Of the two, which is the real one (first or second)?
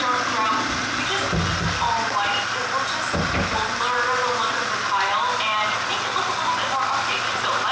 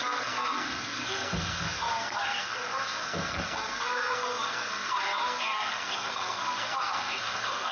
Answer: first